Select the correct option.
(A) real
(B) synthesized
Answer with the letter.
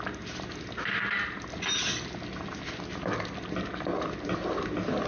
A